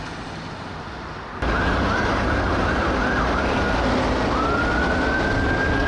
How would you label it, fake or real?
real